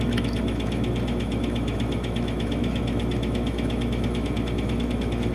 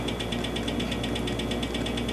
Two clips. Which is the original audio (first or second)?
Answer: second